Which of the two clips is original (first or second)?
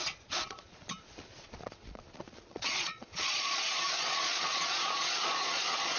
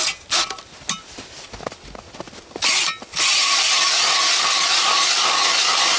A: second